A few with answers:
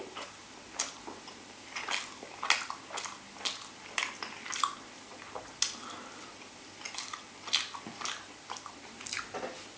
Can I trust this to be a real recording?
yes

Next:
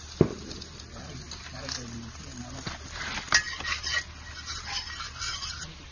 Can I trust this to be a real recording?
yes